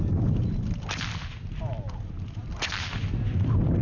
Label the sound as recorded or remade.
remade